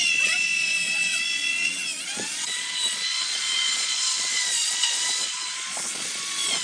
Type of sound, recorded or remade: remade